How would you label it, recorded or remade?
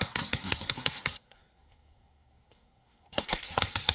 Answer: remade